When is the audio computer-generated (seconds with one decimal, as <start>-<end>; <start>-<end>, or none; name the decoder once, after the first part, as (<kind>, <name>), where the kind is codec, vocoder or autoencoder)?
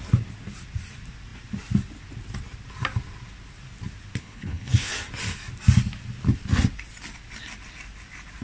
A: 4.2-4.9 (codec, HILCodec)